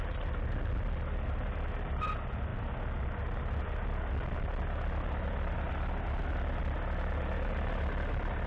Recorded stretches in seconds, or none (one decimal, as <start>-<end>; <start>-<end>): 0.0-8.5